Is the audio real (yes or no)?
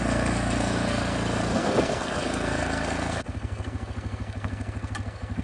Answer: no